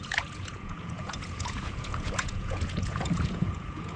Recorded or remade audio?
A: remade